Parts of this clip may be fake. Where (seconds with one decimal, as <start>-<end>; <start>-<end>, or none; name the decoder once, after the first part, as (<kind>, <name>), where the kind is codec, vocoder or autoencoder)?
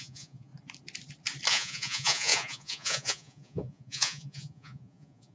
0.0-0.5 (vocoder, Vocos); 1.5-5.3